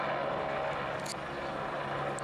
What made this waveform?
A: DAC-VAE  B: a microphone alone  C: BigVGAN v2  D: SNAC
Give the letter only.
B